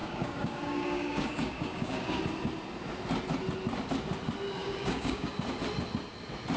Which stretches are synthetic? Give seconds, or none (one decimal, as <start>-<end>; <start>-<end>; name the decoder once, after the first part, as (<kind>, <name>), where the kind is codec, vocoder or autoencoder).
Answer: 0.0-2.2 (codec, DAC); 4.6-5.3